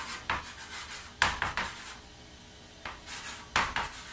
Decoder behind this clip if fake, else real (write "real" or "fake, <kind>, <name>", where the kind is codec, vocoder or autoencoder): real